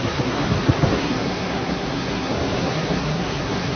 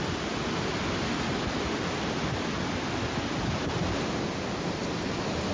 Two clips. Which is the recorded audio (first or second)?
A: second